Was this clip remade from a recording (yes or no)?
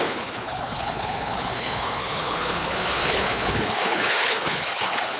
yes